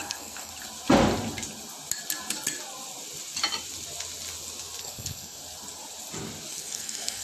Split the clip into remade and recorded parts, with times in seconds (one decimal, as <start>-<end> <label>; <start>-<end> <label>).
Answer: 0.0-0.5 remade; 0.5-4.8 recorded; 4.8-5.4 remade; 5.4-6.5 recorded; 6.5-7.2 remade